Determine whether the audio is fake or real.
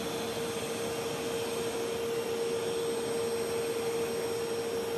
real